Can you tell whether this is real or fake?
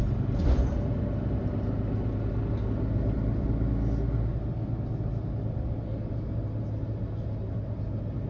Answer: real